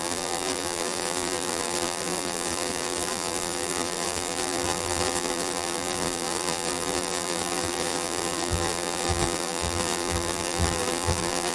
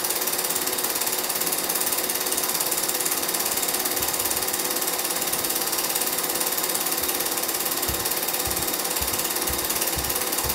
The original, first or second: second